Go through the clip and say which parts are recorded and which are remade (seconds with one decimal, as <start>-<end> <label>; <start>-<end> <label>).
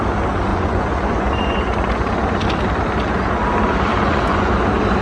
0.0-0.5 recorded; 0.5-2.4 remade; 2.4-3.9 recorded; 3.9-4.5 remade; 4.5-5.0 recorded